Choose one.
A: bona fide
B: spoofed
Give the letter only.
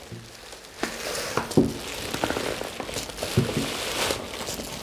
A